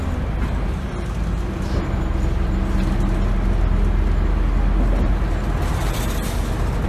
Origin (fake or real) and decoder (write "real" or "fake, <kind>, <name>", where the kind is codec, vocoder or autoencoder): real